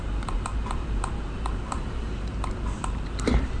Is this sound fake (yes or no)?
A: yes